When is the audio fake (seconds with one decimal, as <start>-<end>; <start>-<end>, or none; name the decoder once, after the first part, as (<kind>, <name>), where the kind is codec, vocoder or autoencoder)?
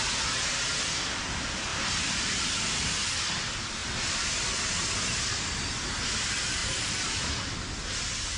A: 1.7-2.8 (vocoder, BigVGAN v2); 6.6-7.2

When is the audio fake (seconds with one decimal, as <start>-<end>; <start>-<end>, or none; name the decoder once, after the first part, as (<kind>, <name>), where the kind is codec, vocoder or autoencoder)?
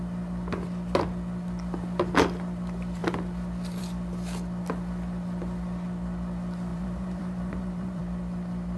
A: 6.7-8.0 (vocoder, BigVGAN v2)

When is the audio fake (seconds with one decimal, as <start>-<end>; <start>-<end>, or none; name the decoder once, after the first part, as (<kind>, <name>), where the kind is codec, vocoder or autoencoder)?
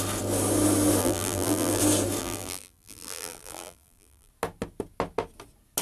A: 1.0-1.8 (vocoder, BigVGAN v2); 2.2-4.3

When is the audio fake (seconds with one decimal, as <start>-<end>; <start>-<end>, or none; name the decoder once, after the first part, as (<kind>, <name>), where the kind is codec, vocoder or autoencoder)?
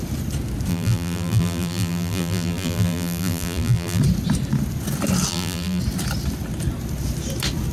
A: 0.7-4.0 (vocoder, BigVGAN v2); 5.3-5.8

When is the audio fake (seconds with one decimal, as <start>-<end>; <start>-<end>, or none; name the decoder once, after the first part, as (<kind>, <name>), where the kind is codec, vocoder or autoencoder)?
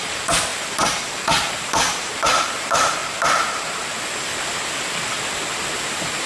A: 0.0-0.5 (vocoder, BigVGAN v2); 1.6-3.0; 5.8-6.3